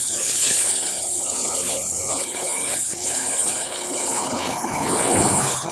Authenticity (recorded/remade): remade